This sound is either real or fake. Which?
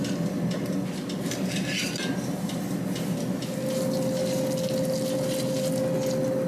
real